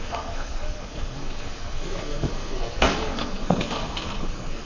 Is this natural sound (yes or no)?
no